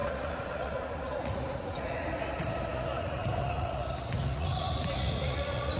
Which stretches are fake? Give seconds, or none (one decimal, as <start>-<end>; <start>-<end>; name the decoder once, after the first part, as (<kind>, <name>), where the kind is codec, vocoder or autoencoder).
0.0-5.8 (vocoder, Vocos)